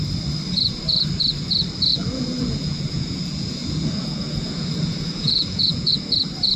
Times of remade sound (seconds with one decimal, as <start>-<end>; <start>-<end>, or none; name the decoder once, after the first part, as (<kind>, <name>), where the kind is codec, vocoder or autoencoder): 1.9-5.9 (vocoder, Vocos)